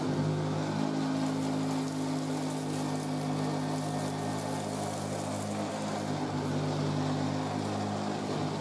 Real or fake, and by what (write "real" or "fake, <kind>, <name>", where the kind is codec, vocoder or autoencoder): real